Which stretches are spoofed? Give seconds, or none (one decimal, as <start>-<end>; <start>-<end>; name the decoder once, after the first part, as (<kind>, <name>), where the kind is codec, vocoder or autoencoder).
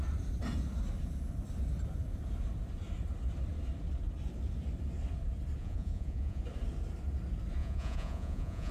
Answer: 5.6-6.4 (vocoder, Vocos); 7.6-8.7